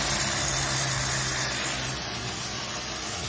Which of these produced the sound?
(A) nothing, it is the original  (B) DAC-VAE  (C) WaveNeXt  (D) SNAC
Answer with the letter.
A